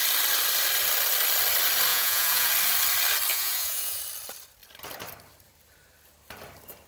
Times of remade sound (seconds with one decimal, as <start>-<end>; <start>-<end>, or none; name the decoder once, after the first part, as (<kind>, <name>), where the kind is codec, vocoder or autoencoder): 1.9-2.5 (vocoder, Vocos); 3.3-4.0